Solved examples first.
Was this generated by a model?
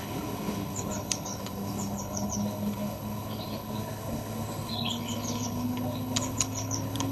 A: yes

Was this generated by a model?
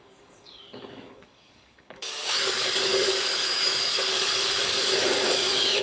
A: yes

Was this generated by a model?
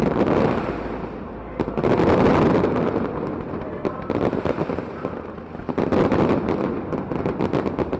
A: no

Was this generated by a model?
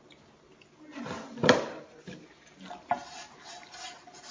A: no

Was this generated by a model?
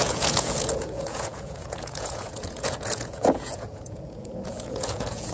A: yes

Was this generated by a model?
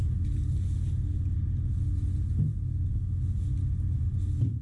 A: no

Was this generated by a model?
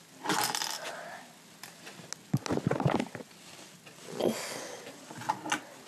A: no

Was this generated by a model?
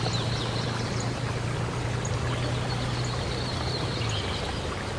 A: no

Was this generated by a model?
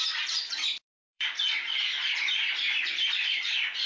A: yes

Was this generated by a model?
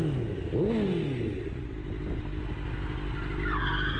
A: no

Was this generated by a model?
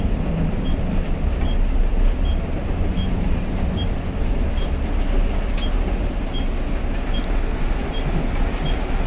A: no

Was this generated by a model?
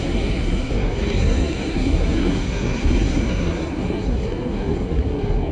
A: yes